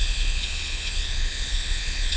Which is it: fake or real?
fake